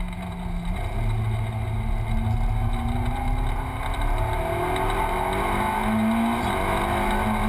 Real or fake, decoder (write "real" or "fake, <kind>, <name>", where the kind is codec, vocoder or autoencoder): real